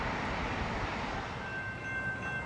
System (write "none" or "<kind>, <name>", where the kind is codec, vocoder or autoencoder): none